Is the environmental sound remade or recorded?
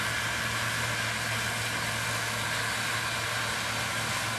recorded